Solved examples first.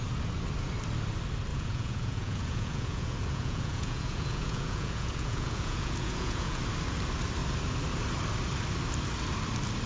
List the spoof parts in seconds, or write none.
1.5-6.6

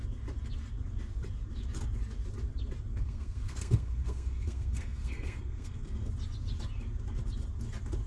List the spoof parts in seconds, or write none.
2.9-6.1

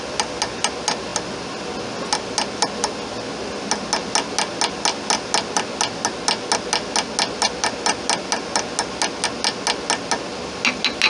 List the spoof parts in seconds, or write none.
none

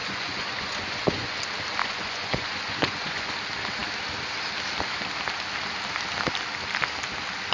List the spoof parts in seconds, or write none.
0.0-1.4; 1.8-3.3

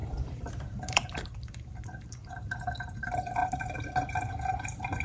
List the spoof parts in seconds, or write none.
0.0-3.4; 4.3-5.0

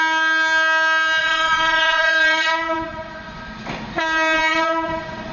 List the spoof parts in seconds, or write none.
1.2-3.4; 4.5-5.3